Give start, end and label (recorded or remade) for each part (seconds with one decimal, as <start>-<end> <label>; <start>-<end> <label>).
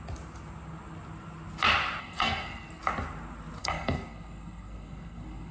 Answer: 0.0-2.0 recorded; 2.0-2.8 remade; 2.8-3.6 recorded; 3.6-5.5 remade